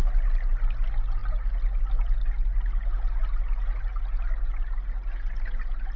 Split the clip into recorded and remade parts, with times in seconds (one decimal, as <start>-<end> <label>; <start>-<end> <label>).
0.0-6.0 recorded